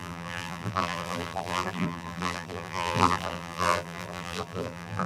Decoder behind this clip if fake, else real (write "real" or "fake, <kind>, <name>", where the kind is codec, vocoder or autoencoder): fake, vocoder, BigVGAN v2